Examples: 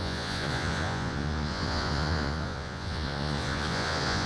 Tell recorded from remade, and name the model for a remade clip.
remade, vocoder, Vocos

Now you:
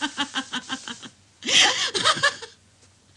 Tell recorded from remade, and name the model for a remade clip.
remade, vocoder, Vocos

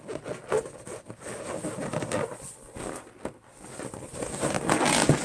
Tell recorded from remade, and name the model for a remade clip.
recorded